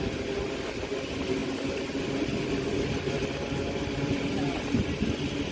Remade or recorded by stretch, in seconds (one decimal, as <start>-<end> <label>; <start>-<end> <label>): 0.0-5.5 recorded